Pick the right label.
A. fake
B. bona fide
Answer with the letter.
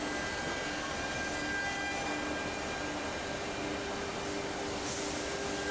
B